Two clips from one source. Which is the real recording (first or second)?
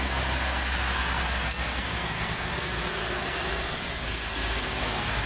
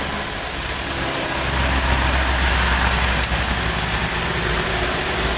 second